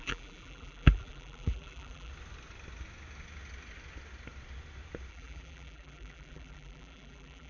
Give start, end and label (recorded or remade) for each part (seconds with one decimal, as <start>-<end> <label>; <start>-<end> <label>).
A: 0.0-2.1 remade; 2.1-5.1 recorded; 5.1-7.5 remade